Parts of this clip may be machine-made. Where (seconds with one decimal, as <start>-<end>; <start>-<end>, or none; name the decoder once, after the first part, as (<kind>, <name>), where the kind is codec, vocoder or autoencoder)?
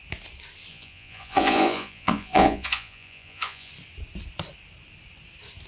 0.7-3.7 (vocoder, Vocos)